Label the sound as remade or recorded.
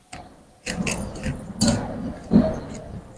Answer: recorded